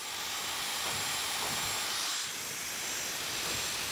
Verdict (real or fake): real